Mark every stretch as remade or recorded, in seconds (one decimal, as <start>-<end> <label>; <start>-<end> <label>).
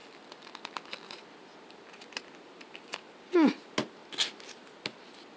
0.0-5.4 recorded